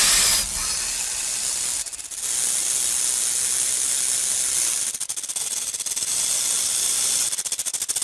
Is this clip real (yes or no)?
yes